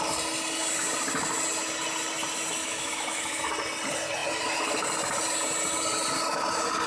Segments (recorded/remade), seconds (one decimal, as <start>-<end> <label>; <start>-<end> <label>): 0.0-2.6 recorded; 2.6-3.5 remade; 3.5-6.9 recorded